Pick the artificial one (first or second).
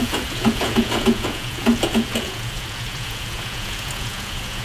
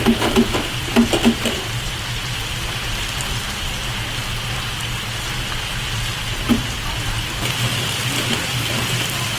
first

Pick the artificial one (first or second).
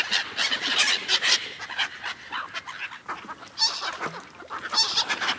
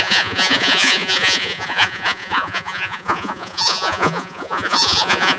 second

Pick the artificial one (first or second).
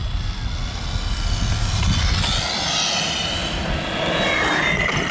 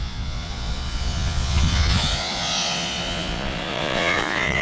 second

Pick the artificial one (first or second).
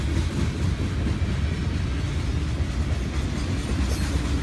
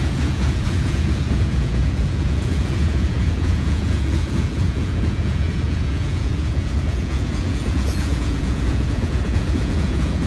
second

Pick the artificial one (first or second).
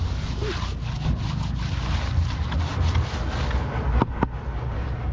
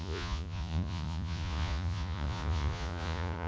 second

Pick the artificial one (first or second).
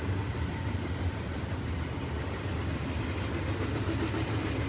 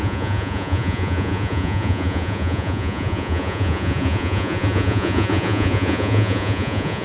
second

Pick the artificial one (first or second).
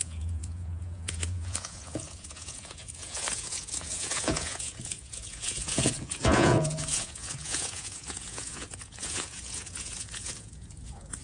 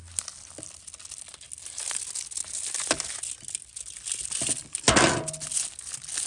first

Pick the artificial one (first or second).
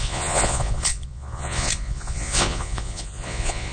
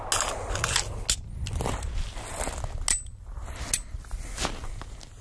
first